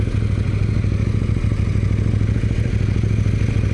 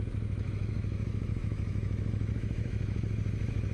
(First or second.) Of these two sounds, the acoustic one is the first